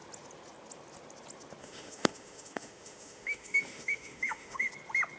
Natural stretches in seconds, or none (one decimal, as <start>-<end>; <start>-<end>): 0.0-1.6; 4.7-5.2